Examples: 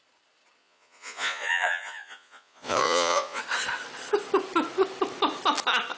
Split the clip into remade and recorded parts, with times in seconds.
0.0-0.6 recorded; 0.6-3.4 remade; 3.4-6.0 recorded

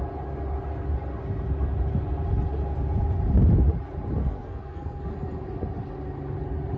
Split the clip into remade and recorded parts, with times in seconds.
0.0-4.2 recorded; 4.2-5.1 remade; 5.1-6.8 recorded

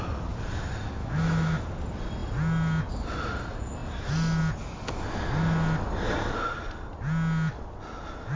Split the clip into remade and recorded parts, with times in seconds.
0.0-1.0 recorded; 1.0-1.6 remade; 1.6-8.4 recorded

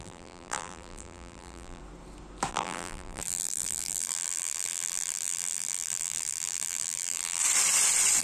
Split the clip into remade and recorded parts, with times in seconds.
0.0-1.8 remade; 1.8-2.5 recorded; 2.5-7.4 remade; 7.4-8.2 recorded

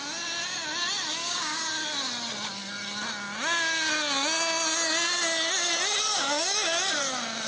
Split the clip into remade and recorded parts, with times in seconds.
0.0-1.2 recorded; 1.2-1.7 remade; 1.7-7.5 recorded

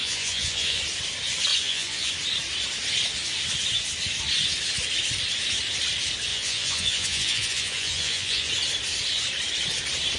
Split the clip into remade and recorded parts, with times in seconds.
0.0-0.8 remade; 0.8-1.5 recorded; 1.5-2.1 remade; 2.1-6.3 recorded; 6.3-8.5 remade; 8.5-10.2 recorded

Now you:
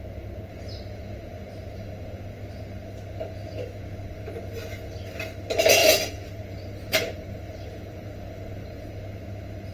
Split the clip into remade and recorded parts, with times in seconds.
0.0-5.8 recorded; 5.8-8.9 remade; 8.9-9.7 recorded

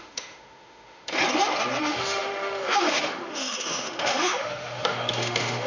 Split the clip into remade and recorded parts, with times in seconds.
0.0-1.2 remade; 1.2-1.8 recorded; 1.8-5.7 remade